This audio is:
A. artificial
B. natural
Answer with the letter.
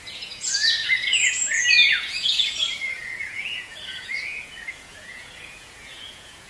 A